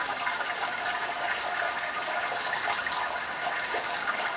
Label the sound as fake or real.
fake